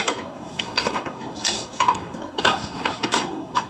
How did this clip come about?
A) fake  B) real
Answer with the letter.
A